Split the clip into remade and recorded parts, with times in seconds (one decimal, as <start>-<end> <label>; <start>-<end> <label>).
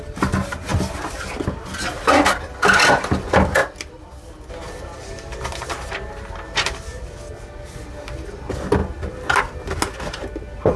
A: 0.0-10.8 recorded